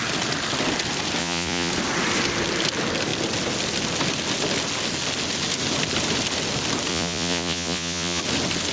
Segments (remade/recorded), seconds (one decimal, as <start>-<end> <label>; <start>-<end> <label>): 0.0-1.2 recorded; 1.2-1.7 remade; 1.7-6.9 recorded; 6.9-8.2 remade; 8.2-8.7 recorded